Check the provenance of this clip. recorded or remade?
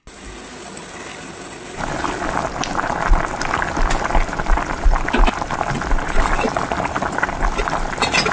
recorded